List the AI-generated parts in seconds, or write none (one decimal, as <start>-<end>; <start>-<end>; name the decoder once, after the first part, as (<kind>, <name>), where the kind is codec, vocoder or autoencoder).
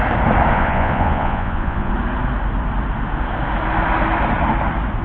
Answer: 0.5-1.9 (vocoder, Vocos)